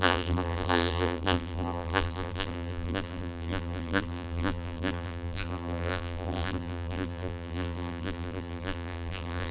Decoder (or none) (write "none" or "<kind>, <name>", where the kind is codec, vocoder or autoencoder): vocoder, BigVGAN v2